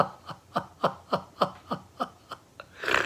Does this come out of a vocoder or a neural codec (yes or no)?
no